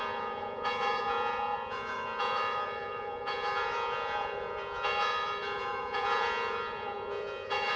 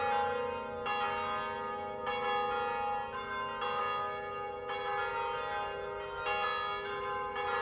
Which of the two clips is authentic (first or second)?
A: second